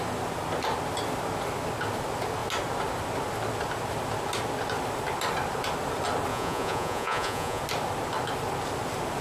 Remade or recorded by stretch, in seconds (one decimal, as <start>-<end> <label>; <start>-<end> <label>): 0.0-6.3 recorded; 6.3-7.6 remade; 7.6-9.2 recorded